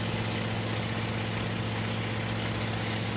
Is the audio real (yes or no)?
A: yes